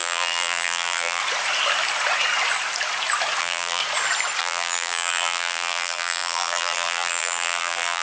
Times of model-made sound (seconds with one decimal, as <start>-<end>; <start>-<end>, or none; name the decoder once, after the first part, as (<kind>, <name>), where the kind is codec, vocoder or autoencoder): 0.0-1.2 (vocoder, BigVGAN v2); 3.4-3.8; 4.4-8.0